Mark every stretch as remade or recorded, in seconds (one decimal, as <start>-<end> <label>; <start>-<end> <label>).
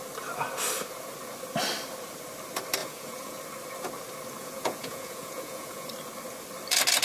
0.0-2.8 recorded; 2.8-3.4 remade; 3.4-4.4 recorded; 4.4-5.9 remade; 5.9-7.0 recorded